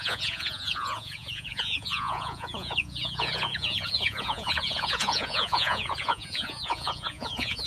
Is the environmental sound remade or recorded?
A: remade